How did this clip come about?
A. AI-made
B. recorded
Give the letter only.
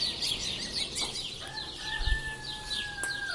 B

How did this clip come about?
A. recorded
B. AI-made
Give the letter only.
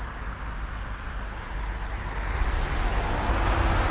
A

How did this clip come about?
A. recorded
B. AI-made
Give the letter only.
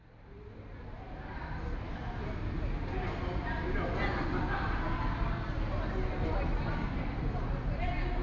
A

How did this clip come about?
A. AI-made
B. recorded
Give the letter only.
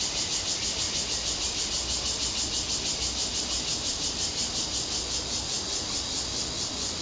B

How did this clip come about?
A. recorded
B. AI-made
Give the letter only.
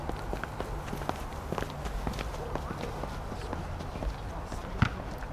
A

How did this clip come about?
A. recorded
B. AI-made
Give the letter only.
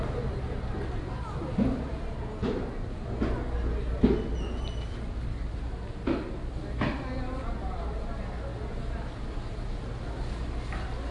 A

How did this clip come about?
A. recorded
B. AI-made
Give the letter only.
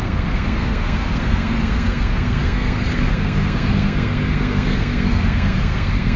B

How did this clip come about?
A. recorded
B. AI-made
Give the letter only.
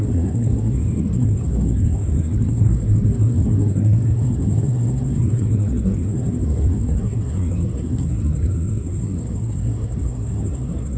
B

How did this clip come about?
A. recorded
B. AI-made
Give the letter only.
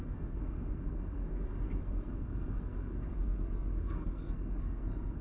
B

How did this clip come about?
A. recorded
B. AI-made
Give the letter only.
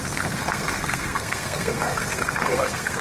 B